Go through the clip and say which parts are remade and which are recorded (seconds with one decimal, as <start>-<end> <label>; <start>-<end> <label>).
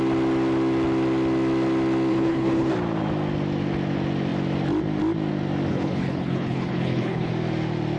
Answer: 0.0-2.1 recorded; 2.1-2.7 remade; 2.7-5.7 recorded; 5.7-7.3 remade; 7.3-8.0 recorded